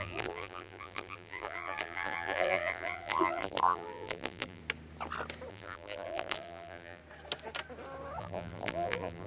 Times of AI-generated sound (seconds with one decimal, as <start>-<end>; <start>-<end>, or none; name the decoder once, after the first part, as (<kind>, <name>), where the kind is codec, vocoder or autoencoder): 0.0-4.6 (vocoder, BigVGAN v2); 5.5-7.0; 8.2-9.3

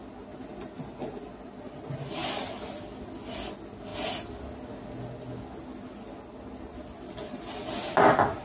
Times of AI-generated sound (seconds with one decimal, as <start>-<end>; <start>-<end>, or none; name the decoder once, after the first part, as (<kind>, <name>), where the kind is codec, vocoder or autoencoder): none

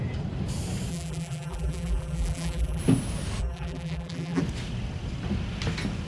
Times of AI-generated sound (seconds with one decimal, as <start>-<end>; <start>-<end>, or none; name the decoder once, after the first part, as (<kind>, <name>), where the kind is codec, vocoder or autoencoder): 0.9-2.8 (vocoder, BigVGAN v2); 3.4-4.4